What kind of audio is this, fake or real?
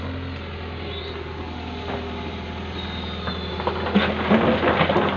real